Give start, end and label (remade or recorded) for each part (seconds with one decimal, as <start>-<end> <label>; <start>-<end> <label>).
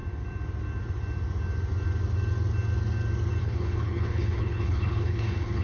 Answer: 0.0-3.4 recorded; 3.4-5.6 remade